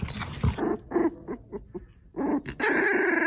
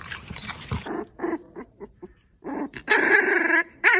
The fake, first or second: second